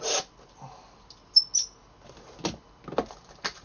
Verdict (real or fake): real